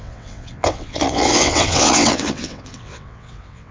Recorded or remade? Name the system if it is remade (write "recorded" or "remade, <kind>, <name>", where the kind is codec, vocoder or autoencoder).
remade, vocoder, WaveNeXt